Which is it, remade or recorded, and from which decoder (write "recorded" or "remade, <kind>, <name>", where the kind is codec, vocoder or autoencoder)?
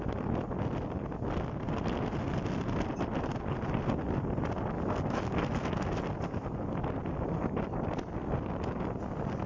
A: recorded